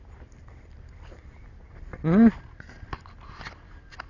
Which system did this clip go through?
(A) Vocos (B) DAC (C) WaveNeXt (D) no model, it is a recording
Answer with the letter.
D